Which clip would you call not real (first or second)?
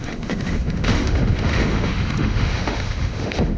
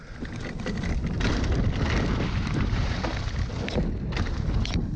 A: first